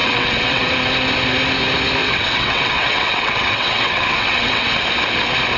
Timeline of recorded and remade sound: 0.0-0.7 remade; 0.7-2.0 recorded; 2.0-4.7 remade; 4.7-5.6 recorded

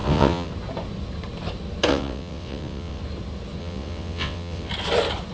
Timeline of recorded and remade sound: 0.0-0.5 remade; 0.5-1.9 recorded; 1.9-3.0 remade; 3.0-3.6 recorded; 3.6-4.7 remade; 4.7-5.3 recorded